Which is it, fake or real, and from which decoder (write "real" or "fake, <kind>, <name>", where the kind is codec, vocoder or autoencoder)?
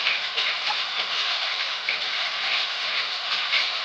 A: fake, autoencoder, DAC-VAE